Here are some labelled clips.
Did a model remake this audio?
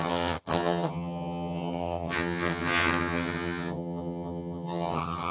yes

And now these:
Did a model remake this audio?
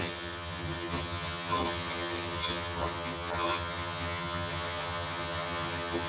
yes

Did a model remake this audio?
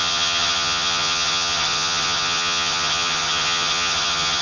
yes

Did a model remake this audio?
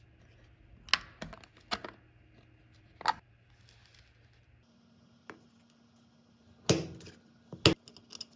no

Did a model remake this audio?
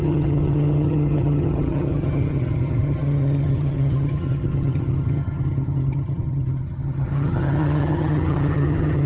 yes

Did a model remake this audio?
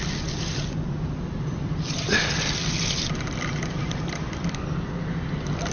no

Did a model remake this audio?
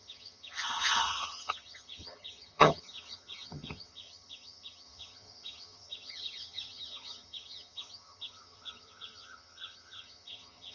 yes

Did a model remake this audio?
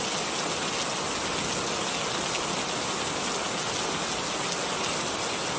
no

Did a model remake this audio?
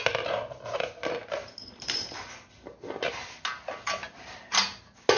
no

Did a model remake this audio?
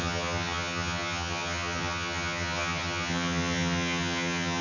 yes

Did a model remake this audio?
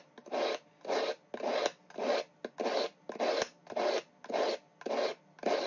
no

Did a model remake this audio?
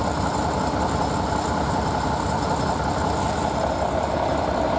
no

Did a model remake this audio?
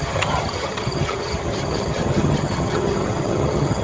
yes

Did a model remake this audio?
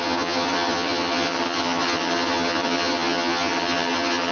yes